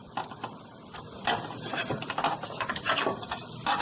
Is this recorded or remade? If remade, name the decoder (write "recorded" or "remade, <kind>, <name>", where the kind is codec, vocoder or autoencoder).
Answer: recorded